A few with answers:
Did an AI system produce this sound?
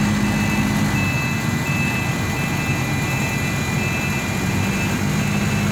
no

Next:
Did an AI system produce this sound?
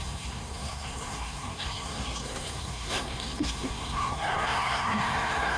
yes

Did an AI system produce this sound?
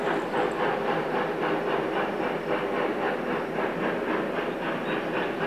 no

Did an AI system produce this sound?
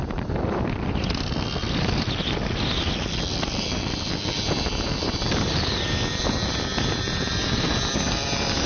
yes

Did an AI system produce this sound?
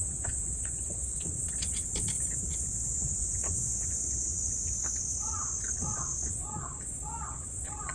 yes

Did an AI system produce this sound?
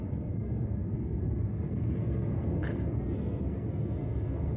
yes